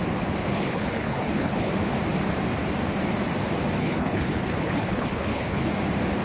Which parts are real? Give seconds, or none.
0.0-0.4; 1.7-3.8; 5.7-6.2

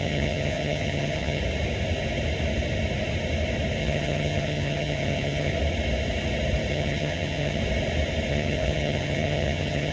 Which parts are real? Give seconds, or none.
1.4-3.8; 5.5-6.7; 7.6-8.3

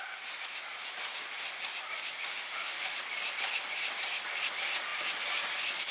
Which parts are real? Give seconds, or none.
0.0-2.3; 3.0-5.9

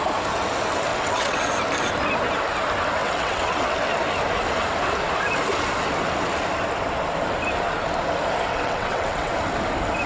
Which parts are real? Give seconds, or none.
0.0-0.9; 1.5-3.0; 3.7-8.5; 9.3-10.1

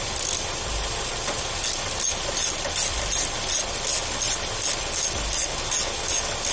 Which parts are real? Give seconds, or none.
0.0-6.5

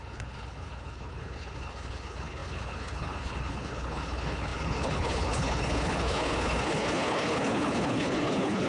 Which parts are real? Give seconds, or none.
none

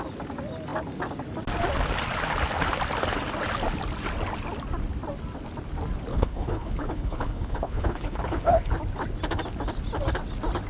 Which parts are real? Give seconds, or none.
0.0-6.1; 8.7-10.7

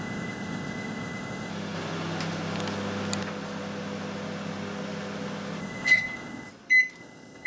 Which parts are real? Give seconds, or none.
1.5-5.6; 6.5-7.0